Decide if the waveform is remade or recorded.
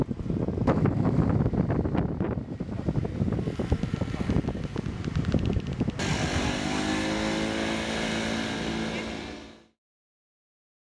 recorded